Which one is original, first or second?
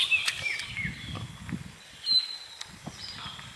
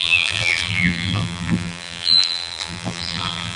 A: first